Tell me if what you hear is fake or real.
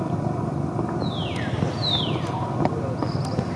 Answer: real